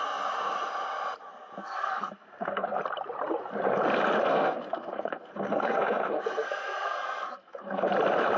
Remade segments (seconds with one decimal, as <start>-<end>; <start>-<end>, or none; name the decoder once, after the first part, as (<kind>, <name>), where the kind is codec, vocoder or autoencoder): 1.6-2.8 (codec, SNAC); 4.3-7.9